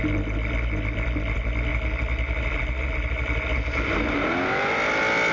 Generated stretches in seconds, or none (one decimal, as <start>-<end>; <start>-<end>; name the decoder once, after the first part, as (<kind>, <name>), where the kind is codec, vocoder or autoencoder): none